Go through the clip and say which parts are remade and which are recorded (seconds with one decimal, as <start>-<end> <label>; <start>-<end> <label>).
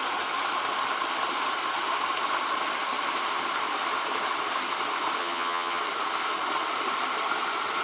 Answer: 0.0-5.2 recorded; 5.2-5.8 remade; 5.8-7.8 recorded